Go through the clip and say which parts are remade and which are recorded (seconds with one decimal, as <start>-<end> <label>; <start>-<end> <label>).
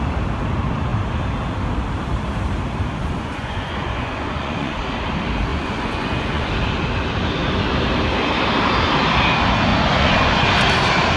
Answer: 0.0-3.0 recorded; 3.0-4.8 remade; 4.8-5.5 recorded; 5.5-6.5 remade; 6.5-9.7 recorded; 9.7-10.5 remade; 10.5-11.2 recorded